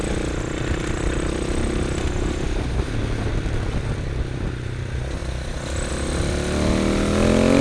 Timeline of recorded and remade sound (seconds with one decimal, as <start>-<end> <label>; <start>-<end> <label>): 0.0-7.6 recorded